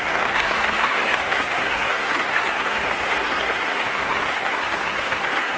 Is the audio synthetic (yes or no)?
yes